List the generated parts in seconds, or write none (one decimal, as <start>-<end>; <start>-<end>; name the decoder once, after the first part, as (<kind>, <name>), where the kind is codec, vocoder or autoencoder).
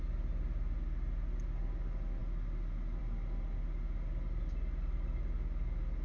none